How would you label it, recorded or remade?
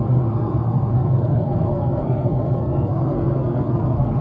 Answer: remade